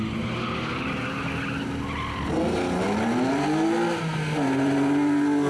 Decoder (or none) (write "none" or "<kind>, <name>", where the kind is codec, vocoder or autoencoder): none